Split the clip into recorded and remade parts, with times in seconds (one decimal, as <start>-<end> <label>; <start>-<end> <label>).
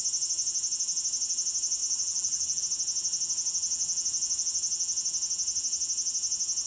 0.0-1.8 recorded; 1.8-2.6 remade; 2.6-6.7 recorded